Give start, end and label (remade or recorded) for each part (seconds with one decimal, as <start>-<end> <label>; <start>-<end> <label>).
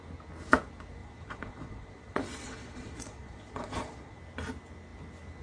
0.0-1.0 recorded; 1.0-4.2 remade; 4.2-5.4 recorded